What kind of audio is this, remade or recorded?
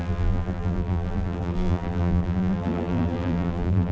remade